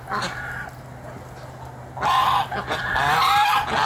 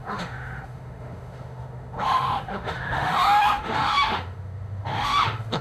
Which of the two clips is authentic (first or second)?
first